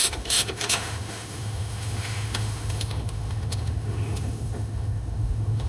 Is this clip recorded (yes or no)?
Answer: no